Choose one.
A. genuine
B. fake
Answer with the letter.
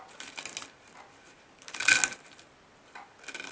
A